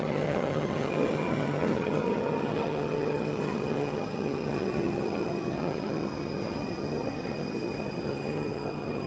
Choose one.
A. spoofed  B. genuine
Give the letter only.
A